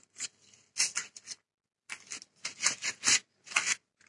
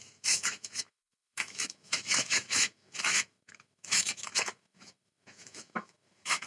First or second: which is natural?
first